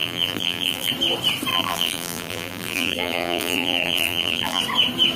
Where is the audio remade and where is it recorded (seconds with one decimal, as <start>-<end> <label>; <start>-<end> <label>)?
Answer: 0.0-0.9 remade; 0.9-1.5 recorded; 1.5-4.6 remade; 4.6-5.2 recorded